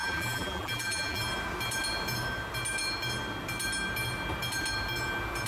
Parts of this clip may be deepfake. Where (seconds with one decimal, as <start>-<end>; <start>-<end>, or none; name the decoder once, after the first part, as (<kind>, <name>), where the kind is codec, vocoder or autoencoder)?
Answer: 0.0-1.2 (vocoder, BigVGAN v2)